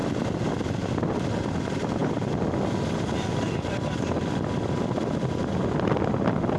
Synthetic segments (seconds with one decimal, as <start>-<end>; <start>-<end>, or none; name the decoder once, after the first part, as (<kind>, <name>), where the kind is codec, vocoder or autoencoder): none